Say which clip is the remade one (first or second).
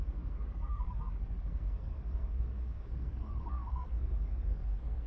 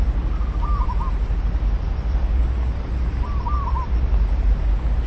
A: first